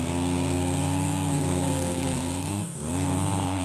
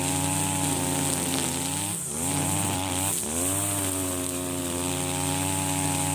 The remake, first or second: first